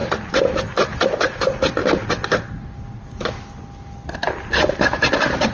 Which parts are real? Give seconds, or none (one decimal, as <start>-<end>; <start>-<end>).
1.1-5.5